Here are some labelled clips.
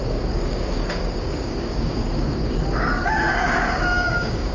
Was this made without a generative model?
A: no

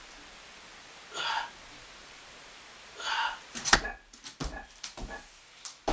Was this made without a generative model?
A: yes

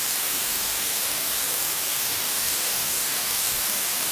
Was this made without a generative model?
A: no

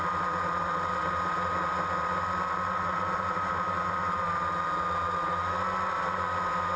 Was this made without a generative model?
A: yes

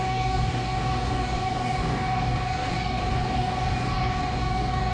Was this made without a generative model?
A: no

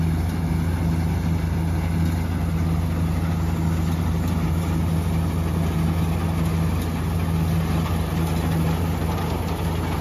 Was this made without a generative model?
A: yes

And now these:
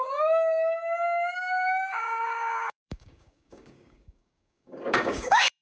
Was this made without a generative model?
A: no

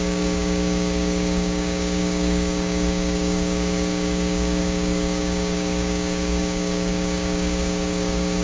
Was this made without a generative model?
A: no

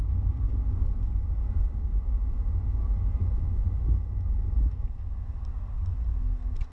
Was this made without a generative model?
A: yes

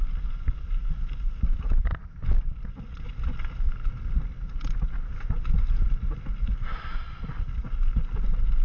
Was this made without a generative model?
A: yes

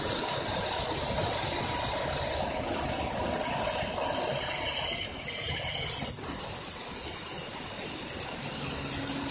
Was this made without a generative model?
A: yes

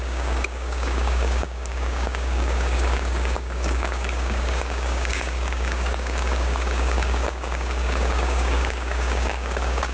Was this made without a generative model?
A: no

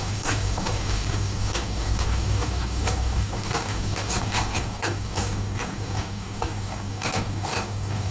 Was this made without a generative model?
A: no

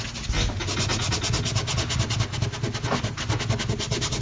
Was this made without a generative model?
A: yes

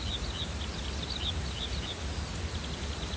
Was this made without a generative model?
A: yes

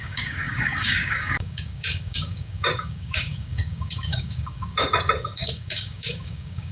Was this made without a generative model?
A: no